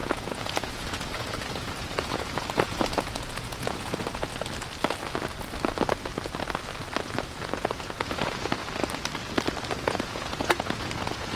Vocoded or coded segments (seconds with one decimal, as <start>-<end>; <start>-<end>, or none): 0.0-4.3; 7.2-8.6; 9.8-11.4